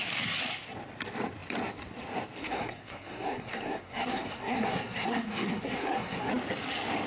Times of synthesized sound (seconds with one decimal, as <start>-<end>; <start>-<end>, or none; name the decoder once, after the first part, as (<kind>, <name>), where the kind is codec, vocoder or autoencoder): 2.4-6.3 (codec, SNAC)